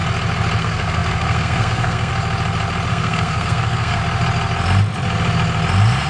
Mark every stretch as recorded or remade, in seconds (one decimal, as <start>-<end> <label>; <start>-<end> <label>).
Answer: 0.0-0.6 recorded; 0.6-2.1 remade; 2.1-2.9 recorded; 2.9-4.0 remade; 4.0-6.1 recorded

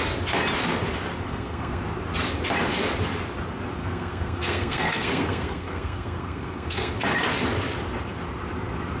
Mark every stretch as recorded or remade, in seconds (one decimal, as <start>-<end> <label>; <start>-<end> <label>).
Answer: 0.0-1.3 recorded; 1.3-1.8 remade; 1.8-3.8 recorded; 3.8-6.9 remade; 6.9-9.0 recorded

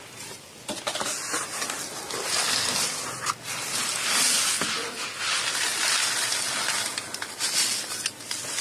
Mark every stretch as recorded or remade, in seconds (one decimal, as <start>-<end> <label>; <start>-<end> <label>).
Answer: 0.0-8.6 recorded

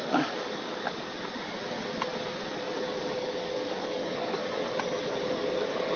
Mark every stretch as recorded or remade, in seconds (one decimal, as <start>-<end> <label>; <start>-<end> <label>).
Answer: 0.0-1.1 remade; 1.1-3.2 recorded; 3.2-4.4 remade; 4.4-5.2 recorded; 5.2-6.0 remade